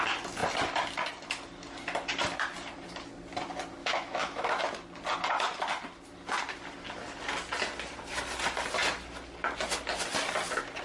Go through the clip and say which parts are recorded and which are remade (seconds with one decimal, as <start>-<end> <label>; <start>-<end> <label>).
0.0-3.8 recorded; 3.8-4.6 remade; 4.6-10.8 recorded